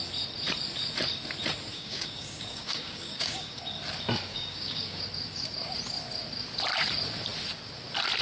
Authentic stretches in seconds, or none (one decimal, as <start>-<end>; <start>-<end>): 0.0-1.7; 3.6-4.3; 5.0-8.2